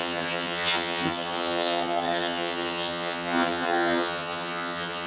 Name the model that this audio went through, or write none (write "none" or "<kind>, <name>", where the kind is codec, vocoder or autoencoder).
vocoder, HiFi-GAN